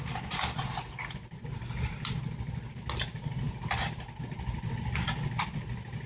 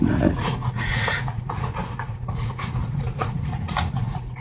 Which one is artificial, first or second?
second